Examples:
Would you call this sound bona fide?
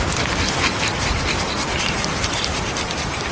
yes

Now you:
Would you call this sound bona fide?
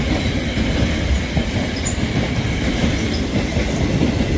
no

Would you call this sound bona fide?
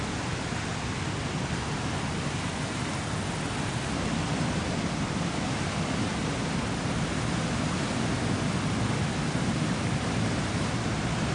yes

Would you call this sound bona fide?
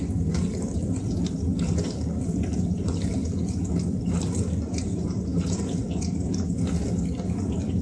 yes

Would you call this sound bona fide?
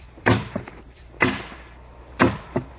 no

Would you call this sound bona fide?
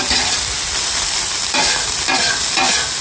yes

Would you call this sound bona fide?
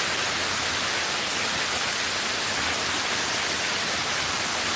yes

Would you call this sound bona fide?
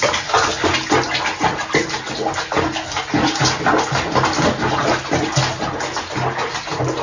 yes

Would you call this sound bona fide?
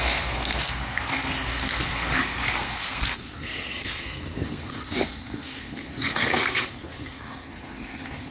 no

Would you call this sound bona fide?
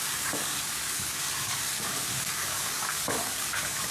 no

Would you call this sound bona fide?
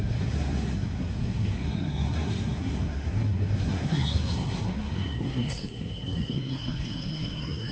no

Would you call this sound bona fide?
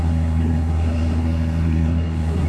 no